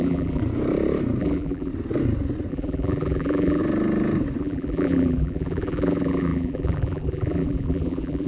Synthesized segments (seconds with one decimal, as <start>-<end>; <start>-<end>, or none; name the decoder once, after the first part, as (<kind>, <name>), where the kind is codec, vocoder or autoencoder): 0.0-0.4 (vocoder, BigVGAN v2); 1.2-1.7; 2.5-3.6; 4.4-8.3